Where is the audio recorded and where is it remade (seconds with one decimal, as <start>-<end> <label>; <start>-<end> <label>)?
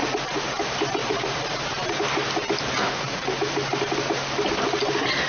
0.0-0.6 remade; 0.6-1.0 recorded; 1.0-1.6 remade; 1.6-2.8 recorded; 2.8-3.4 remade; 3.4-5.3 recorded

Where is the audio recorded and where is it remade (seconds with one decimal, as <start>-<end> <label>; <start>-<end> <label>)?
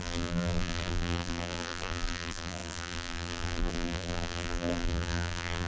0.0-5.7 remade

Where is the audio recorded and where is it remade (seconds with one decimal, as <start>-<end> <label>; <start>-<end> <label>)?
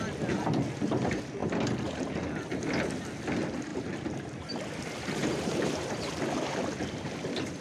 0.0-3.7 recorded; 3.7-4.6 remade; 4.6-5.2 recorded; 5.2-6.1 remade; 6.1-7.6 recorded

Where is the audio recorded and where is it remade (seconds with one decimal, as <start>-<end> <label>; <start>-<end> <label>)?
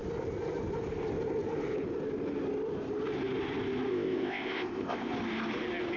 0.0-3.9 recorded; 3.9-5.1 remade; 5.1-6.0 recorded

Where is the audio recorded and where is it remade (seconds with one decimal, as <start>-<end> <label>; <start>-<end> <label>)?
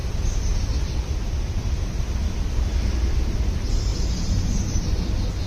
0.0-2.0 remade; 2.0-3.9 recorded; 3.9-4.8 remade; 4.8-5.5 recorded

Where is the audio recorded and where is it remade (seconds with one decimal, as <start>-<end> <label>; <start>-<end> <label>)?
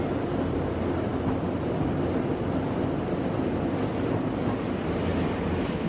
0.0-5.9 recorded